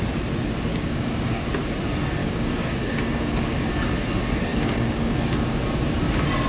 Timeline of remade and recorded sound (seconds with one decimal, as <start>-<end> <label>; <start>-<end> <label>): 0.0-0.7 recorded; 0.7-1.5 remade; 1.5-2.2 recorded; 2.2-3.7 remade; 3.7-4.5 recorded; 4.5-5.6 remade; 5.6-6.5 recorded